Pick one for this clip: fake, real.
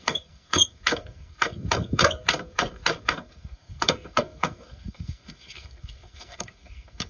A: fake